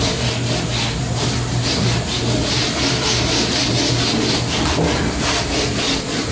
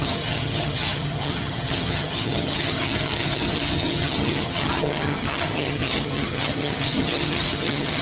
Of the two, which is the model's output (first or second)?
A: second